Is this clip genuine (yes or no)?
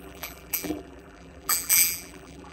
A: no